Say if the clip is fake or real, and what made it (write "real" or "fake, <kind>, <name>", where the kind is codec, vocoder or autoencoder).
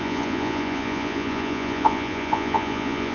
fake, vocoder, Vocos